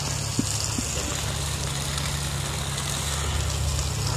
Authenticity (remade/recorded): recorded